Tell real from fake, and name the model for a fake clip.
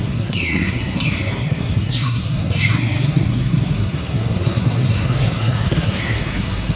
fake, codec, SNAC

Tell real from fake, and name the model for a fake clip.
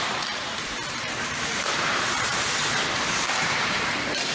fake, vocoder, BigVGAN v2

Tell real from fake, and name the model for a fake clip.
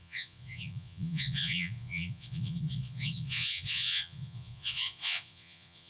fake, vocoder, Vocos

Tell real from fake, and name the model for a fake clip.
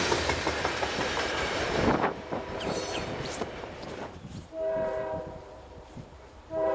fake, vocoder, BigVGAN v2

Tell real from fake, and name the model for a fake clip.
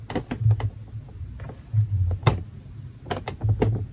real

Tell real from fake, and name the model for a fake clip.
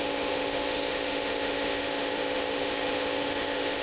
fake, autoencoder, DAC-VAE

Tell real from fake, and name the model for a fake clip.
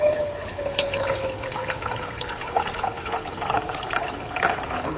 fake, codec, HILCodec